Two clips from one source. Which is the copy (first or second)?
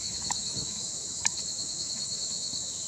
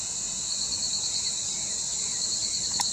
first